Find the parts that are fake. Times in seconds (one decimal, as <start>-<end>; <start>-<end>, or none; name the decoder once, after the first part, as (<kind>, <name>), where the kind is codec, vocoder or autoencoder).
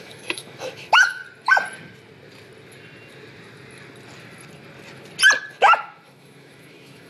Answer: 0.0-1.2 (autoencoder, DAC-VAE); 5.5-7.1